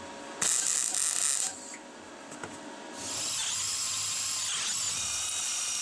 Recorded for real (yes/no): yes